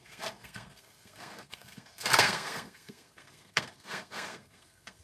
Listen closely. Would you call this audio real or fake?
fake